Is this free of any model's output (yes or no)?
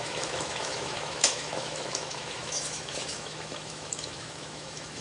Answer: no